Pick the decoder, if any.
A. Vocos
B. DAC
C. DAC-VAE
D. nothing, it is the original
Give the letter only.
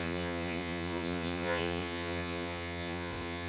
A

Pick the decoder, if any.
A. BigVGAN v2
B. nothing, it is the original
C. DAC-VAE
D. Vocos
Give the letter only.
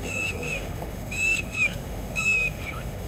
C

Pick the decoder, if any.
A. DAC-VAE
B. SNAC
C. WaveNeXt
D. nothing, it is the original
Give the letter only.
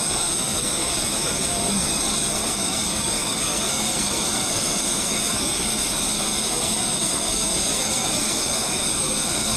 B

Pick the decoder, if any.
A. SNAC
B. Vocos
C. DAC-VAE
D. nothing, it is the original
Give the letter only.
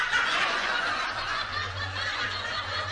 B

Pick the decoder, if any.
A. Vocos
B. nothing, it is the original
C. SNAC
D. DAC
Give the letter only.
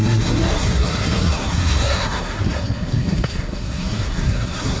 C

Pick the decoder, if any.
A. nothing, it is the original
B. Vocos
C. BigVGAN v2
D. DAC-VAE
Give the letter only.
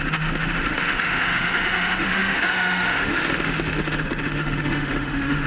D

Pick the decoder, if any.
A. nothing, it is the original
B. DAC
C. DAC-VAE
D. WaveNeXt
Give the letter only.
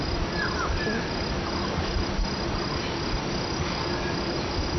A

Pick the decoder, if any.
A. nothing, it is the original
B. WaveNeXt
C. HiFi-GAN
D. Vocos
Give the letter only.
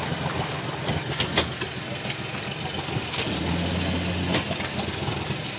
A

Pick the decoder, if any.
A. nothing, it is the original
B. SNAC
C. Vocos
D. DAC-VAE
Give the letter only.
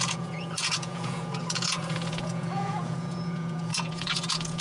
C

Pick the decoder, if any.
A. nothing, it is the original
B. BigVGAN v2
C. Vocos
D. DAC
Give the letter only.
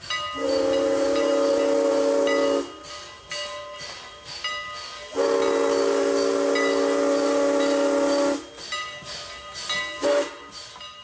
A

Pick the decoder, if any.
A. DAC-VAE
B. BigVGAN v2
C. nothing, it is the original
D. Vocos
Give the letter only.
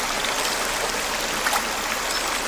C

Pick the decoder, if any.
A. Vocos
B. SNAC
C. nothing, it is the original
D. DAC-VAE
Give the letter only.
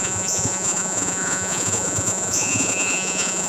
A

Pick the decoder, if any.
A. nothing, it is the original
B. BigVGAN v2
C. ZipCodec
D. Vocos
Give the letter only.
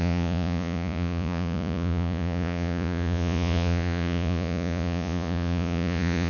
D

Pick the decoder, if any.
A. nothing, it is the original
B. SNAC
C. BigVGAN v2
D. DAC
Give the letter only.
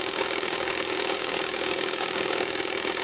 D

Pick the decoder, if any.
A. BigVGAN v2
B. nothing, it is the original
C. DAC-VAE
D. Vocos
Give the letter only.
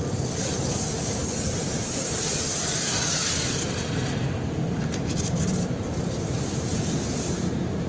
A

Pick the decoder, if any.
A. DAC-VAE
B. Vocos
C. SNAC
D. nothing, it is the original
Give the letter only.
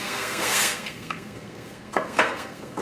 C